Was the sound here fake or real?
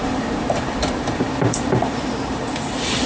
fake